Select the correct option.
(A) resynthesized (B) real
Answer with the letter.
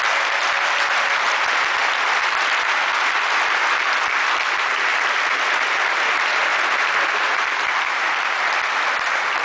B